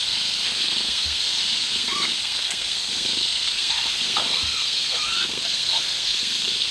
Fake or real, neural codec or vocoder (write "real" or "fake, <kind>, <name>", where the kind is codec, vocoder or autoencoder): fake, codec, SNAC